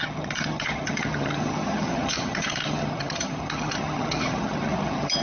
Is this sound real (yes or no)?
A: no